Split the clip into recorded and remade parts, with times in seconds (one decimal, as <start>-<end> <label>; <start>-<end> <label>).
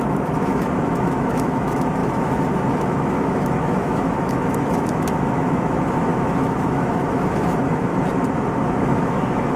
0.0-7.9 remade; 7.9-8.8 recorded; 8.8-9.6 remade